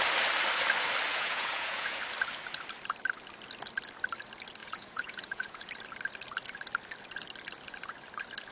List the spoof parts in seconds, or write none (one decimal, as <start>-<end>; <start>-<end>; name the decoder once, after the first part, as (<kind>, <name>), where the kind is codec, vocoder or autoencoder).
1.1-2.0 (vocoder, Vocos); 4.6-5.7